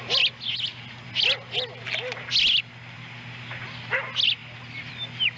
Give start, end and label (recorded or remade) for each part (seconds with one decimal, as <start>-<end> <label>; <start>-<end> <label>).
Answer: 0.0-5.4 recorded